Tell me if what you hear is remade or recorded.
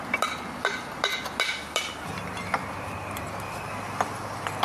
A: recorded